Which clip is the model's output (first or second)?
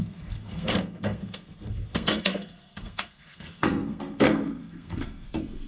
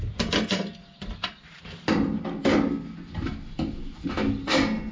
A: first